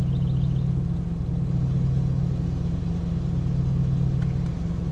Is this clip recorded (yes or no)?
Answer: yes